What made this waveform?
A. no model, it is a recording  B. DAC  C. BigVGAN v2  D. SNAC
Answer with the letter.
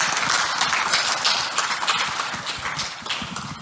A